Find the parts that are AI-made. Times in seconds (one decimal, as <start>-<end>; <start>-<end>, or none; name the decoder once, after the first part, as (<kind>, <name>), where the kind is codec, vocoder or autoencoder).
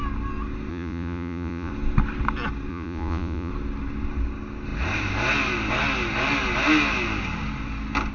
0.7-1.7 (vocoder, Vocos); 2.7-3.5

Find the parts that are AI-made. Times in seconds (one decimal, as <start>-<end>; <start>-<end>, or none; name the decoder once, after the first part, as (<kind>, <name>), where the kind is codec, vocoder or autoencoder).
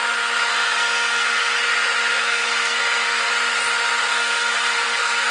0.5-1.6 (codec, SNAC); 2.2-3.3; 4.1-5.3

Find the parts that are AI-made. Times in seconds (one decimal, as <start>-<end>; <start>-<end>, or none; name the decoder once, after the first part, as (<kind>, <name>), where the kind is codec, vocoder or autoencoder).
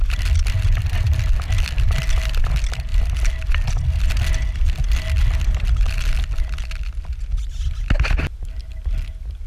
none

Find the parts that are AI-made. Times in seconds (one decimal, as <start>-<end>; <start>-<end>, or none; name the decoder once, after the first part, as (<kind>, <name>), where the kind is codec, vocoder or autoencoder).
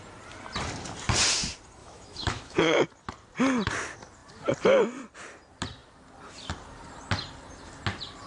1.8-2.9 (autoencoder, DAC-VAE)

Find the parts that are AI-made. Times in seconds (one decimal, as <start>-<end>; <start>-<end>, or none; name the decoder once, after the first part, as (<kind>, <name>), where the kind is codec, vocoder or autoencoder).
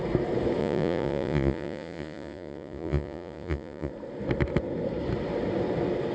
0.6-3.9 (vocoder, Vocos)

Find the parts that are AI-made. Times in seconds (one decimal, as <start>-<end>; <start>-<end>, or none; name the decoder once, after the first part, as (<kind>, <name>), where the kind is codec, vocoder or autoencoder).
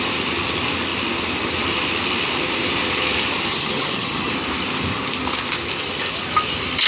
3.5-4.3 (vocoder, HiFi-GAN)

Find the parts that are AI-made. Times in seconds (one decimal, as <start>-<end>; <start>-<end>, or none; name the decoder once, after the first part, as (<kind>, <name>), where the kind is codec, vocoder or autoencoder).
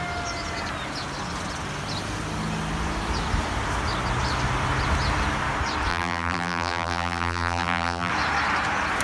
5.9-8.1 (vocoder, BigVGAN v2)